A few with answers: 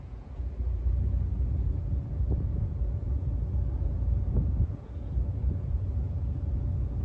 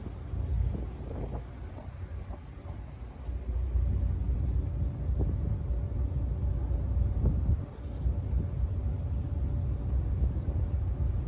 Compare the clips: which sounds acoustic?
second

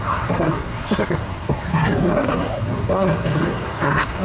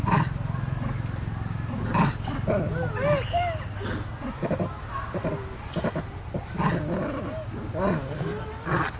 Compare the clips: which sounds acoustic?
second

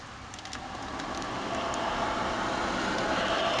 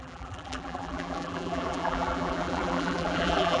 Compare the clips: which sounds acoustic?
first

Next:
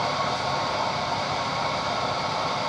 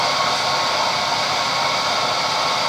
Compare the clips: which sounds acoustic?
second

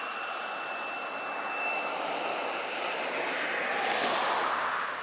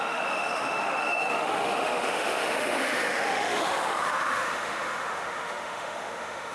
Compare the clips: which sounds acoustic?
first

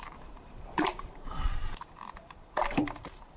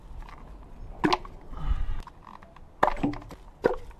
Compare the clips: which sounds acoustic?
second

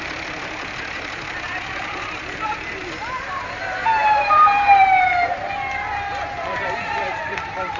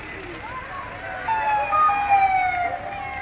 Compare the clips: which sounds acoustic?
second